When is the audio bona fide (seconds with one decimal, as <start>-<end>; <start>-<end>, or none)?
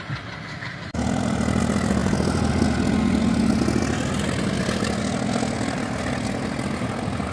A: 0.0-7.3